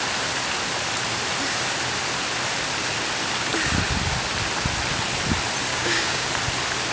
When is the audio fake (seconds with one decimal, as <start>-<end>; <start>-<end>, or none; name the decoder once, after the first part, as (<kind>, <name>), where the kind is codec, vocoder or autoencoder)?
5.7-6.3 (codec, DAC)